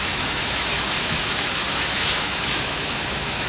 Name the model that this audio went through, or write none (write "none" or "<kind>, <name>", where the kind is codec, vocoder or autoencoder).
autoencoder, DAC-VAE